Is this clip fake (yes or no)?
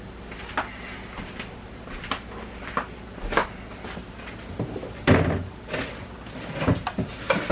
no